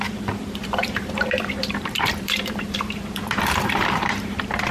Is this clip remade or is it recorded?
remade